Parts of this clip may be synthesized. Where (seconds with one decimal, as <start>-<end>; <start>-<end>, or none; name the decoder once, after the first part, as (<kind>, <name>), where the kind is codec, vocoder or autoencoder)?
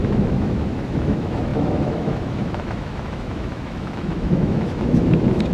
0.0-5.5 (autoencoder, DAC-VAE)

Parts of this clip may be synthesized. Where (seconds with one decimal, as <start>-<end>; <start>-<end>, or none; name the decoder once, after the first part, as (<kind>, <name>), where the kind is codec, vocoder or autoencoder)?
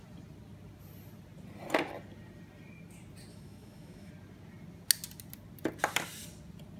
3.3-4.1 (autoencoder, DAC-VAE)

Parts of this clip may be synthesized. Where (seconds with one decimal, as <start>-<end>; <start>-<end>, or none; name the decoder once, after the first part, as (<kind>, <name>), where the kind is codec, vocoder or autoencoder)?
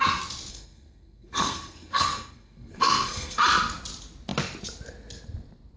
0.5-3.4 (codec, SNAC)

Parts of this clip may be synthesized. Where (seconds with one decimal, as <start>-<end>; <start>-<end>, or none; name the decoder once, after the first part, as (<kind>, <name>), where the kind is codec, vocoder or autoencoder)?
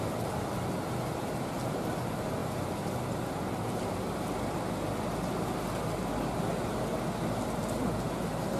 none